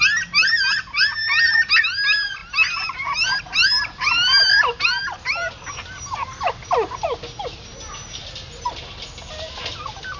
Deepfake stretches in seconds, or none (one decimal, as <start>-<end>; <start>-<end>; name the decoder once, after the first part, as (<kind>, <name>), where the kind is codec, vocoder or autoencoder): 2.4-3.4 (vocoder, BigVGAN v2)